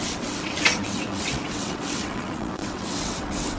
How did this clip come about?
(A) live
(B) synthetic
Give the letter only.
B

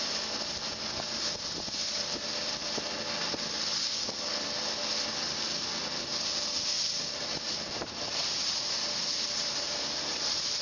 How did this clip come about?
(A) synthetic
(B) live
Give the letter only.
B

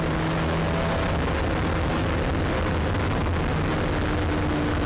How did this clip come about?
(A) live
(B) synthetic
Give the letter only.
A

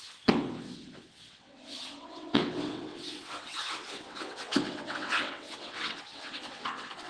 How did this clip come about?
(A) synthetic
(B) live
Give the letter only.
A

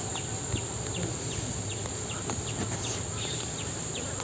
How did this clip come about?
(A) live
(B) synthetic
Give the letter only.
A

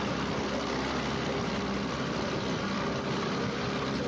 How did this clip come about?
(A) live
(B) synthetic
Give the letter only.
A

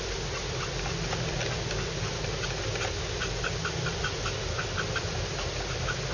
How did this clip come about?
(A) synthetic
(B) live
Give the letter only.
B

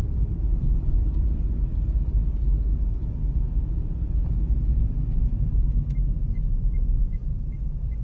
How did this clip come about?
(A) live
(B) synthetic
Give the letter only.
A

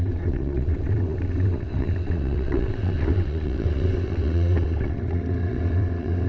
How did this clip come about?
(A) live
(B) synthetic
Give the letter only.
B